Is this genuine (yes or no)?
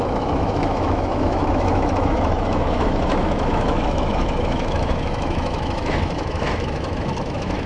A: no